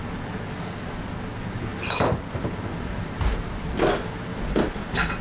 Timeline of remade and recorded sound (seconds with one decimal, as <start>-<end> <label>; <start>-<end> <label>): 0.0-1.7 recorded; 1.7-3.8 remade; 3.8-4.3 recorded; 4.3-5.2 remade

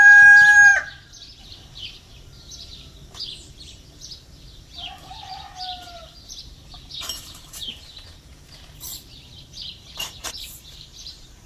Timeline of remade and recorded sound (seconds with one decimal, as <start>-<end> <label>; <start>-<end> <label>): 0.0-0.7 remade; 0.7-1.4 recorded; 1.4-11.5 remade

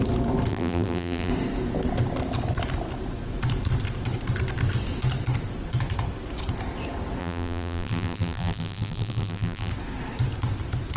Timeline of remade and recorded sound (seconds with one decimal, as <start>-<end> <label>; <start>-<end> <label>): 0.0-0.5 recorded; 0.5-1.3 remade; 1.3-7.2 recorded; 7.2-9.7 remade; 9.7-11.0 recorded